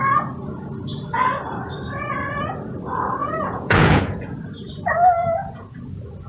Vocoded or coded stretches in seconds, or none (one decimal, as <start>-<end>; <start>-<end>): 3.2-4.4; 5.2-5.8